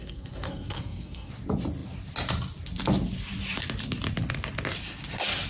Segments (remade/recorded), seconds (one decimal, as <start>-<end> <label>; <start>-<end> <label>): 0.0-1.3 remade; 1.3-5.5 recorded

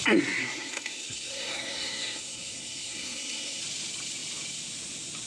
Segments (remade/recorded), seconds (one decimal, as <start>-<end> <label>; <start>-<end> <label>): 0.0-0.4 recorded; 0.4-3.6 remade; 3.6-5.3 recorded

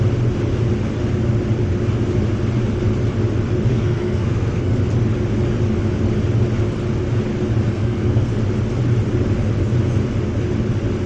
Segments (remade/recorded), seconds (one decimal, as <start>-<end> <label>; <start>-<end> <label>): 0.0-3.7 recorded; 3.7-4.8 remade; 4.8-7.7 recorded; 7.7-8.3 remade; 8.3-11.1 recorded

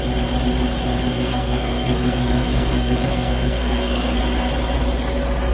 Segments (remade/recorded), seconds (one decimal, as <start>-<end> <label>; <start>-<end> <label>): 0.0-0.9 recorded; 0.9-4.2 remade; 4.2-5.5 recorded

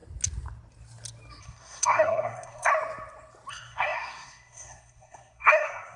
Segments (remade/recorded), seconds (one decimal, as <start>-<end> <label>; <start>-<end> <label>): 0.0-1.4 recorded; 1.4-2.7 remade; 2.7-3.5 recorded; 3.5-6.0 remade

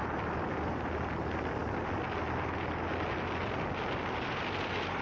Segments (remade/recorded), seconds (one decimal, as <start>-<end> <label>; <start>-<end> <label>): 0.0-5.0 recorded

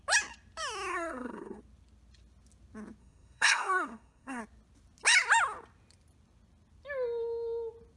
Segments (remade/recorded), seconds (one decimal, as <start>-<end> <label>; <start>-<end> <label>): 0.0-0.9 recorded; 0.9-1.6 remade; 1.6-3.0 recorded; 3.0-4.4 remade; 4.4-8.0 recorded

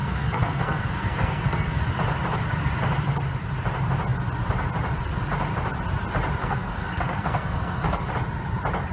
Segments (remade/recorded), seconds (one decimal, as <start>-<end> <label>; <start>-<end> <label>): 0.0-1.8 remade; 1.8-6.4 recorded; 6.4-8.1 remade; 8.1-8.9 recorded